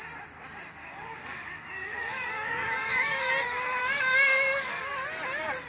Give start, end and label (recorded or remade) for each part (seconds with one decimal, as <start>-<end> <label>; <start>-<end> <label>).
0.0-0.8 recorded; 0.8-3.3 remade; 3.3-3.8 recorded; 3.8-4.8 remade; 4.8-5.7 recorded